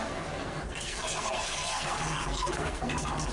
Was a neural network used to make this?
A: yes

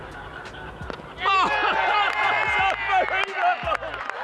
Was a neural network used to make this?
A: no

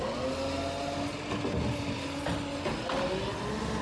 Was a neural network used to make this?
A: no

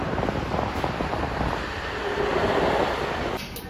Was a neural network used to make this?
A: no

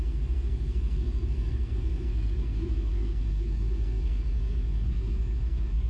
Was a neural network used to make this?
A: yes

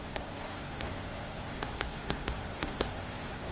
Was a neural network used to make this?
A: yes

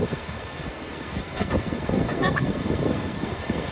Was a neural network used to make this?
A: yes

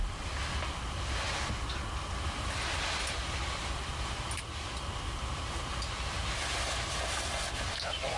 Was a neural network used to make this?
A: no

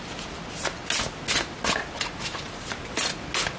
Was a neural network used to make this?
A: no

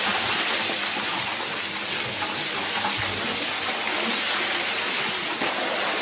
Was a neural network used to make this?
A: no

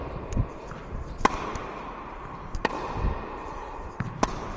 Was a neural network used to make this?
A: no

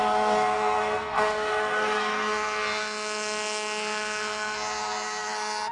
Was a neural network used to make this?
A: yes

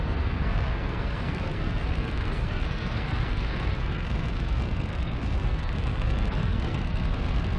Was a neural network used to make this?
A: yes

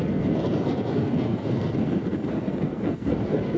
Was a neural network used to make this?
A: yes